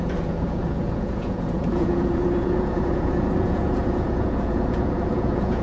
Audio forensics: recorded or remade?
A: remade